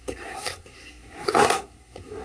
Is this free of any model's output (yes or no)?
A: no